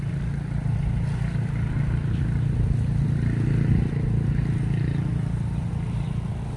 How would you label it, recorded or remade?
recorded